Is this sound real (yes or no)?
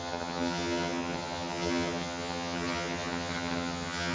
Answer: no